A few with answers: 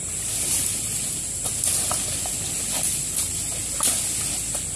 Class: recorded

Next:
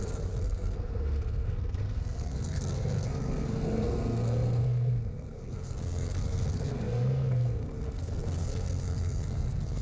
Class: remade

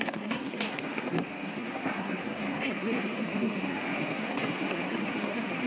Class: remade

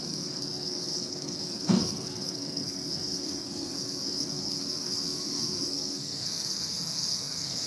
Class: remade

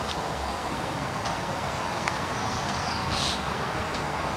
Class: remade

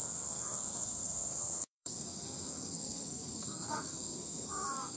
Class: remade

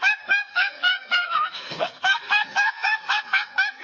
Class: remade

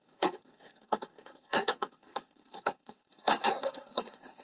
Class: remade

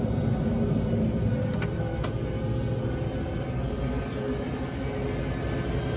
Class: recorded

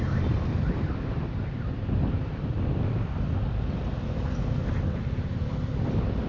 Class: recorded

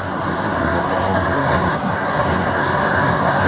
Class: remade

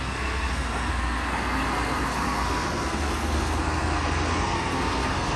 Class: remade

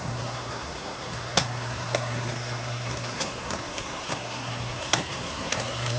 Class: remade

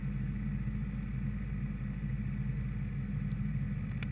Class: recorded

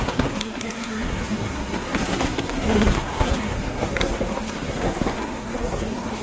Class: remade